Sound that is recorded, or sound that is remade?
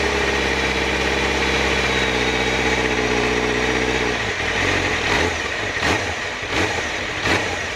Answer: remade